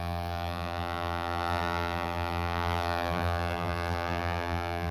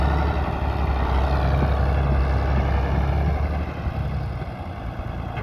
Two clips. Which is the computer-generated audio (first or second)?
first